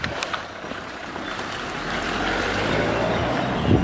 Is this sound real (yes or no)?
yes